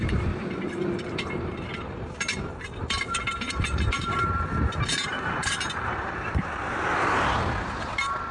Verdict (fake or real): fake